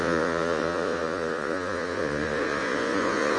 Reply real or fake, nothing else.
fake